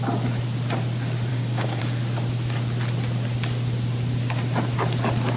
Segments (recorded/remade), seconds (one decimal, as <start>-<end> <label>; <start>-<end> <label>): 0.0-1.3 recorded; 1.3-1.8 remade; 1.8-5.4 recorded